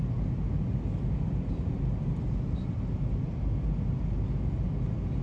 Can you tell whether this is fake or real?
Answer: real